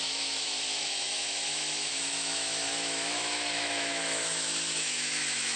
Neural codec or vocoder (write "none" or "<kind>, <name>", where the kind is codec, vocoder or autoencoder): autoencoder, DAC-VAE